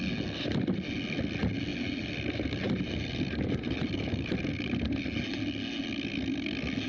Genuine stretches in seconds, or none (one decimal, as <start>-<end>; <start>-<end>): 0.0-1.7; 4.3-6.9